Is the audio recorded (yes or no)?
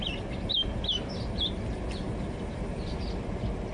yes